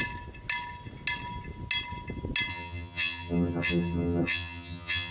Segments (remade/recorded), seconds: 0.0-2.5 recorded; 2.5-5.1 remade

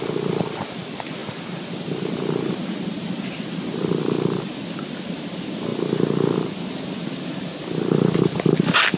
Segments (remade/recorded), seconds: 0.0-9.0 recorded

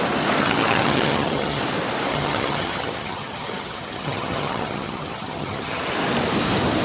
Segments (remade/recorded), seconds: 0.0-0.4 recorded; 0.4-1.6 remade; 1.6-2.1 recorded; 2.1-5.8 remade; 5.8-6.8 recorded

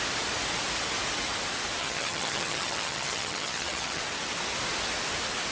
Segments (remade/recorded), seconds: 0.0-1.8 recorded; 1.8-4.0 remade; 4.0-5.5 recorded

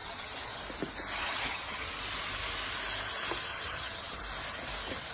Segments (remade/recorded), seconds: 0.0-0.6 remade; 0.6-1.2 recorded; 1.2-1.9 remade; 1.9-3.5 recorded; 3.5-4.2 remade; 4.2-5.1 recorded